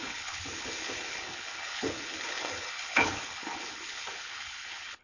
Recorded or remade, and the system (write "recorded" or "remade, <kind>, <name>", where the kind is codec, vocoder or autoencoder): remade, codec, HILCodec